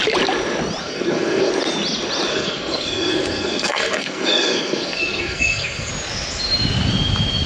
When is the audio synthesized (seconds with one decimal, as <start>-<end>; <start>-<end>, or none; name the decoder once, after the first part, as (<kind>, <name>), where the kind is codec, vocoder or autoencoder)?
0.8-1.5 (codec, SNAC); 2.3-5.9